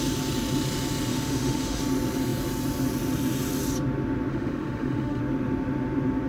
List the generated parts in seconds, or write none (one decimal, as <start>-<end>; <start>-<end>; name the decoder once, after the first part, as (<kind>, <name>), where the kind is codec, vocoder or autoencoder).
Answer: 1.1-1.8 (autoencoder, DAC-VAE); 4.3-5.2